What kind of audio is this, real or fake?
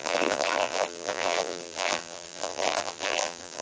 fake